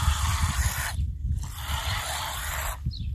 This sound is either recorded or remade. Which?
recorded